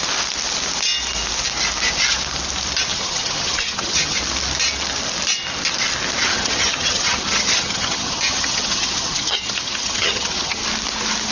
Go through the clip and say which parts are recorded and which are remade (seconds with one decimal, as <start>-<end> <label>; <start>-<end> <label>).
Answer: 0.0-2.9 recorded; 2.9-4.2 remade; 4.2-6.3 recorded; 6.3-10.6 remade; 10.6-11.3 recorded